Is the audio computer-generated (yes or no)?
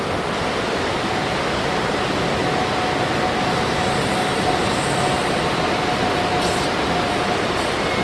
no